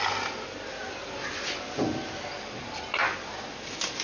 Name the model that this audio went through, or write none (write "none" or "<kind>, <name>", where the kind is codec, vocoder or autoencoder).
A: none